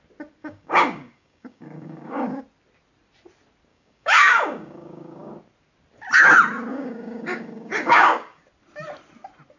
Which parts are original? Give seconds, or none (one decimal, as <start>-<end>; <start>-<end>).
0.0-0.4; 2.4-3.7; 5.3-6.7; 8.4-9.6